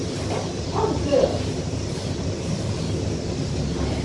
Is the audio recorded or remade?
remade